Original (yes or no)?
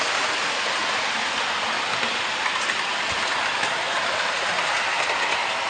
yes